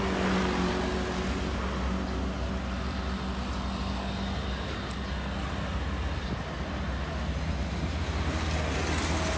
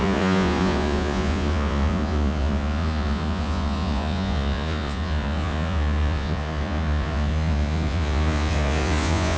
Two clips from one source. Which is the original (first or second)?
first